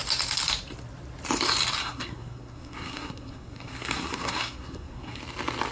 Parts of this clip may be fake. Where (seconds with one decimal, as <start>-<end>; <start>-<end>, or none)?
1.8-5.2